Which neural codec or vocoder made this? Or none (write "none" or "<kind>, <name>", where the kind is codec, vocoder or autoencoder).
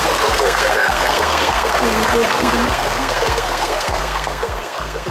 codec, SNAC